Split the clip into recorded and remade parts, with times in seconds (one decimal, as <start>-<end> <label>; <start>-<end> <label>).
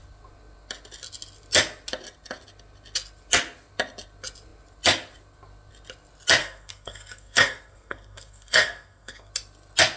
0.0-6.4 recorded; 6.4-9.3 remade; 9.3-10.0 recorded